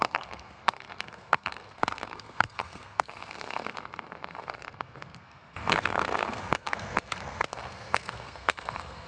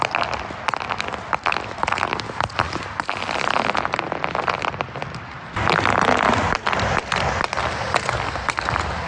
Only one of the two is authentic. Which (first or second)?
second